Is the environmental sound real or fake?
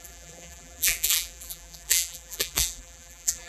fake